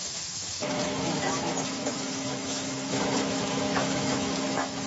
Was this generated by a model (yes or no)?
yes